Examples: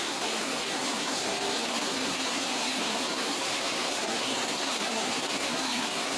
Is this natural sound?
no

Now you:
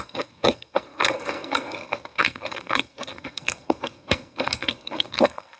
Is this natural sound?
no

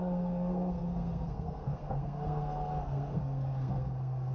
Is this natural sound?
no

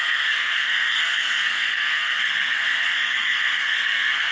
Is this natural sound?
no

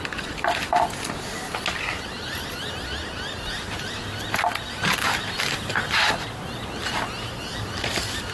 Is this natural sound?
yes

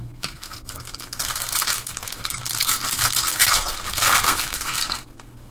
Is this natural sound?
no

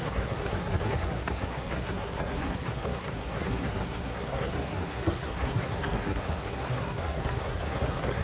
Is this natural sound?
no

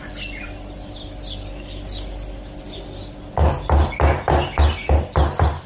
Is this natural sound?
yes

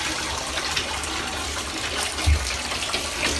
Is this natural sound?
yes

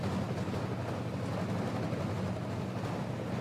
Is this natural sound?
yes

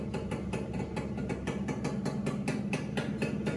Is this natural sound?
yes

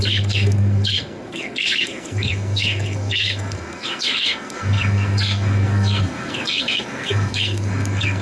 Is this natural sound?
no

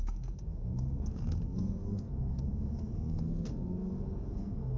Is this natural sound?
no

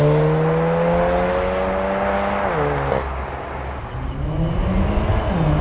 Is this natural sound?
yes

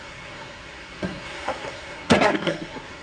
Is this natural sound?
no